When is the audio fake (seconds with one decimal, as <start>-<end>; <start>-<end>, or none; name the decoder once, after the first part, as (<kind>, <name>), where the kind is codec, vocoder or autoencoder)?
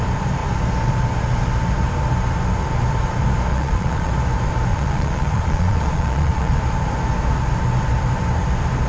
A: 3.5-4.1 (vocoder, Vocos); 4.7-6.6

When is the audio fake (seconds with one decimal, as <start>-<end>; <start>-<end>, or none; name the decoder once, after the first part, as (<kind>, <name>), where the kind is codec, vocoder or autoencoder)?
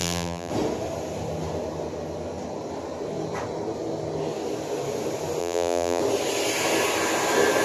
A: 0.0-0.5 (vocoder, BigVGAN v2); 5.4-6.0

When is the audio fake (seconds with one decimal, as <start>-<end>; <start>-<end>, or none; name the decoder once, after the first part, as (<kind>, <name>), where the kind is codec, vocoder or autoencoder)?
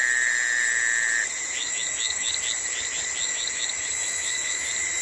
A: 1.6-2.3 (autoencoder, DAC-VAE); 3.2-4.6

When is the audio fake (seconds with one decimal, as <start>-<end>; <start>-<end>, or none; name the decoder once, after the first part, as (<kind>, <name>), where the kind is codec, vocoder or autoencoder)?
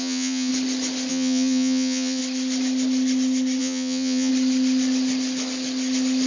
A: 0.0-0.5 (vocoder, Vocos); 1.1-2.2; 3.6-4.3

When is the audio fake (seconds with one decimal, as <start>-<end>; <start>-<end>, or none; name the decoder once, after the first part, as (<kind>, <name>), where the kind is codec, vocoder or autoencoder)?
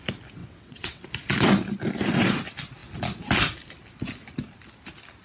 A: 0.4-1.0 (vocoder, WaveNeXt)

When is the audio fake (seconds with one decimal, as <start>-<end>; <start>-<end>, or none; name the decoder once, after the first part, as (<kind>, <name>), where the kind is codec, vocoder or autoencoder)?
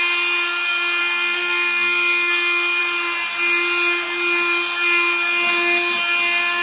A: 1.0-2.8 (codec, SNAC)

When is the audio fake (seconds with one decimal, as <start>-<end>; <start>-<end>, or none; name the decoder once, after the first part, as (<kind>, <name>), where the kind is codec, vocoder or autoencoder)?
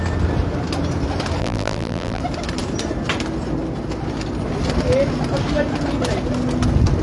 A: 1.4-2.2 (vocoder, BigVGAN v2)